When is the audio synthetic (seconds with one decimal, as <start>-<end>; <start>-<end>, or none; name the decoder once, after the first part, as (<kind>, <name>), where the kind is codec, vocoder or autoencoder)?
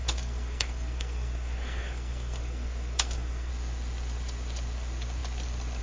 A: 0.0-3.5 (codec, SNAC)